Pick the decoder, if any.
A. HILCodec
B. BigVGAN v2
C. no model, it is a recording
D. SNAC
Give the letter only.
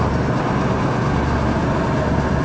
C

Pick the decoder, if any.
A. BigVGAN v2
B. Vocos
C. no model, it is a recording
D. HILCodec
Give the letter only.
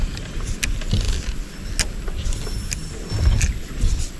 C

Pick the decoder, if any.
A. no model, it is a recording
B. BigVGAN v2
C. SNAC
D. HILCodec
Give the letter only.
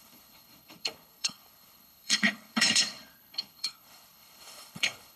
D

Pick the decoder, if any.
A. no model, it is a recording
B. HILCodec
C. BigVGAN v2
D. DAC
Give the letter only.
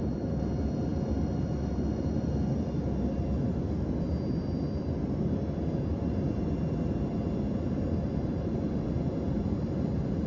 A